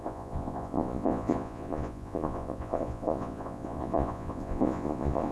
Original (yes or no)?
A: no